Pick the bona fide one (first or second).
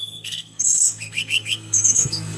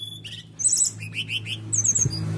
second